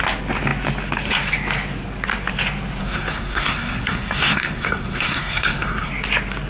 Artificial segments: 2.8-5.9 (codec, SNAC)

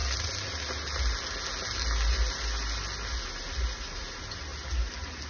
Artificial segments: none

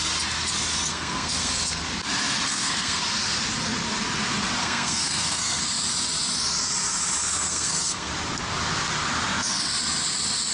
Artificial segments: 0.9-1.8 (codec, SNAC); 2.5-3.0; 4.6-5.6; 7.2-8.1

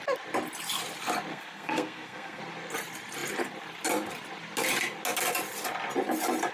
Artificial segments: 1.3-2.4 (codec, SNAC)

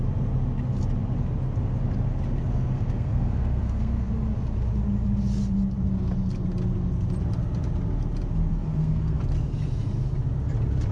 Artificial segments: 2.5-4.1 (codec, SNAC); 8.5-9.2

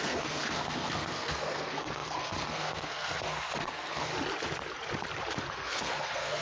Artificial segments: 0.0-4.1 (codec, SNAC); 5.5-6.4